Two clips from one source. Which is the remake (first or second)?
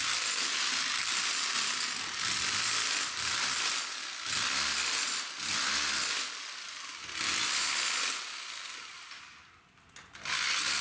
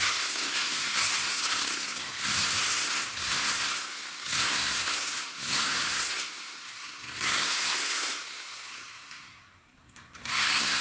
second